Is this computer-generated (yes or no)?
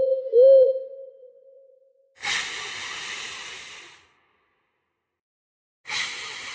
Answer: no